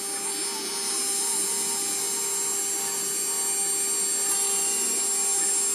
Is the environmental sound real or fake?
real